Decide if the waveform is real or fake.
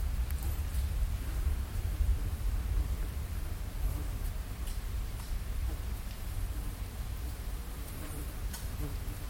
fake